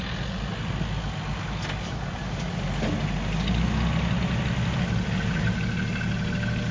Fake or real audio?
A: real